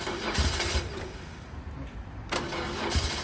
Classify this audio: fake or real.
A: real